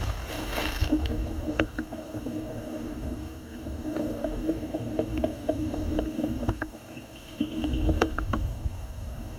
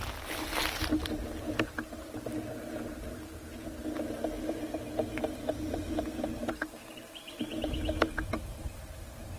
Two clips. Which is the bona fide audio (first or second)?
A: second